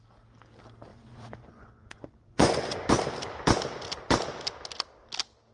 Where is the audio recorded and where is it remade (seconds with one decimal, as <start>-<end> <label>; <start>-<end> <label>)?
0.0-0.9 recorded; 0.9-2.9 remade; 2.9-5.5 recorded